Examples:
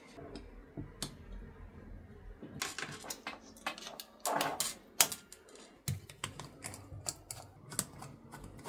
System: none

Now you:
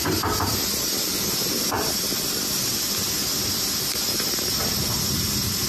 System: none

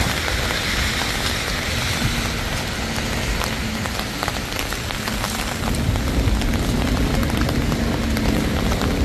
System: none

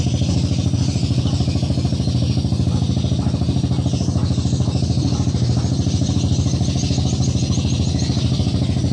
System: none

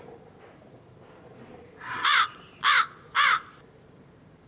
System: vocoder, BigVGAN v2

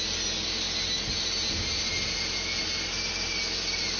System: none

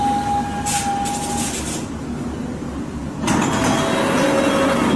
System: none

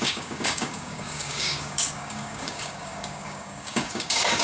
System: codec, DAC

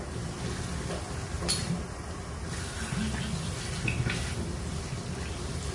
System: none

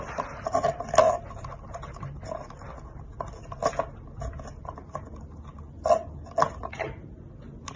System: none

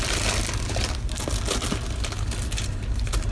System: none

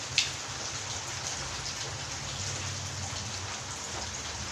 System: none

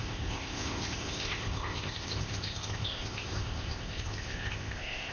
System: codec, ZipCodec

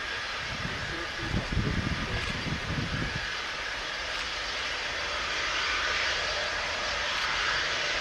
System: vocoder, BigVGAN v2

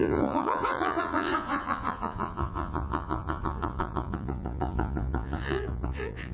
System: vocoder, Vocos